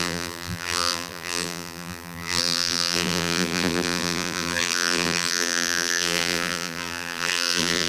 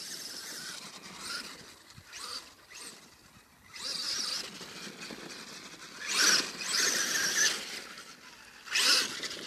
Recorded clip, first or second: second